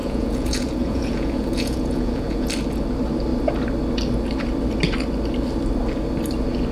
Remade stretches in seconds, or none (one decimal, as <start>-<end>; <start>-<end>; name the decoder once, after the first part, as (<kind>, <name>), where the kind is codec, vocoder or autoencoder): 0.0-2.5 (vocoder, Vocos)